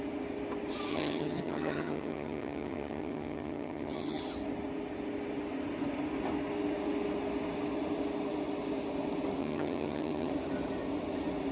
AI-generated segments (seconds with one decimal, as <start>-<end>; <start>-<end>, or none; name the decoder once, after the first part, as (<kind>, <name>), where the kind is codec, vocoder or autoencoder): 0.9-4.2 (vocoder, HiFi-GAN); 9.4-10.3